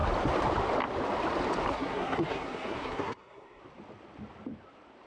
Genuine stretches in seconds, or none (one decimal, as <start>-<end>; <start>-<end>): 0.0-1.7; 3.6-5.1